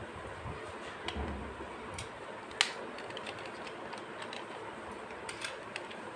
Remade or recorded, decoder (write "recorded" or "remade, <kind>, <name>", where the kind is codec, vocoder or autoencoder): recorded